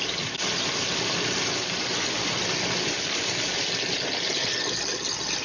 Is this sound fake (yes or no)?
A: no